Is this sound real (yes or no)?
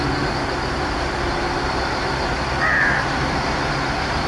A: yes